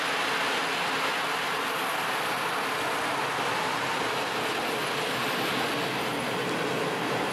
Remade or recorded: recorded